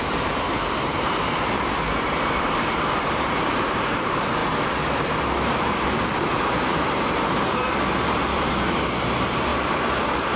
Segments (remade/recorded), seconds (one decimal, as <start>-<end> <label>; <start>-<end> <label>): 0.0-4.4 remade; 4.4-4.9 recorded; 4.9-9.5 remade; 9.5-10.4 recorded